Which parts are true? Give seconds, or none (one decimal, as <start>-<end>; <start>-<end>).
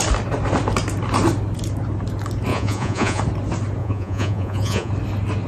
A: 0.0-2.5; 3.2-3.8; 4.9-5.5